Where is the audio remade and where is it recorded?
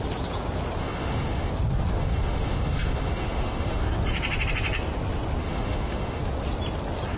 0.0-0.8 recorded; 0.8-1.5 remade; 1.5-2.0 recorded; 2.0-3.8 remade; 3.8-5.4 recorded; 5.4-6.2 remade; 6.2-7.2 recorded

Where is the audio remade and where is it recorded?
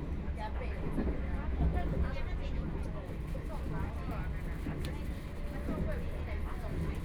0.0-7.0 recorded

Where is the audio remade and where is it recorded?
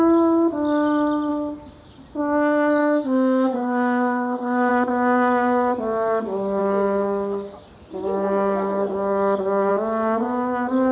0.0-2.8 recorded; 2.8-4.7 remade; 4.7-10.9 recorded